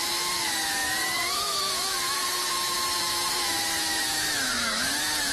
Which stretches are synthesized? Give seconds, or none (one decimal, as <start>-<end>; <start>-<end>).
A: 0.0-5.3